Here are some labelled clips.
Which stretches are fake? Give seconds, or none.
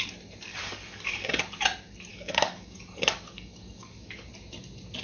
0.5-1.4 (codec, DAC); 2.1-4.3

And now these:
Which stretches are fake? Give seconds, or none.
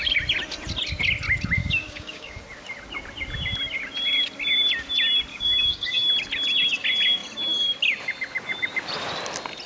1.6-2.4 (codec, DAC); 5.3-6.1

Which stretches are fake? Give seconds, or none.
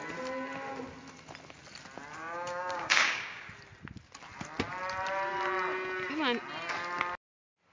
2.2-3.5 (codec, DAC)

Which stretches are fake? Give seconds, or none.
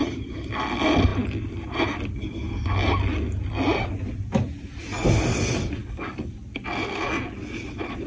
5.8-6.3 (codec, DAC)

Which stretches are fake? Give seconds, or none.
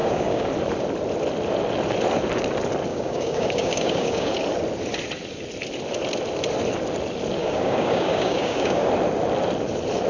0.0-0.5 (codec, DAC); 2.9-4.3; 7.4-8.9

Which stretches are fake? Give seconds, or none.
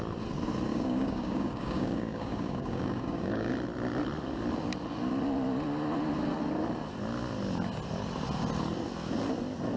0.7-3.5 (codec, DAC)